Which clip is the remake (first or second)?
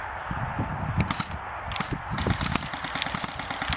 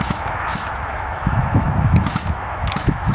second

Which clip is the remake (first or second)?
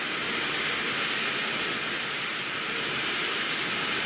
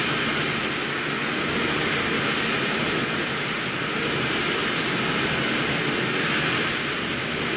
first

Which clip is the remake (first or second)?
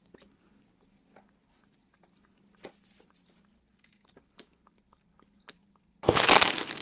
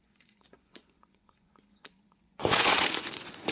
second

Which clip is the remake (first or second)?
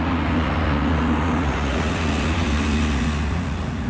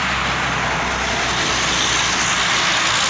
first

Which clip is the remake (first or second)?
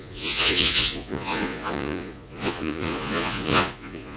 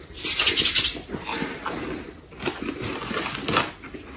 first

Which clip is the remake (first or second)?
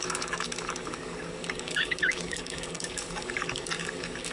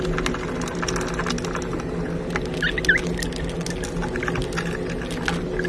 first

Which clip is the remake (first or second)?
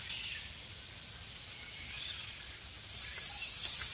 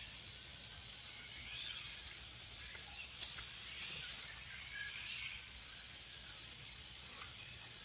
second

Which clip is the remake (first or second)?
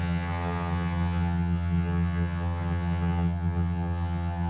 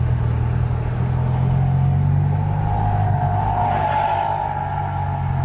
first